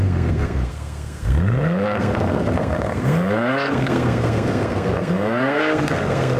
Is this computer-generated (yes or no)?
yes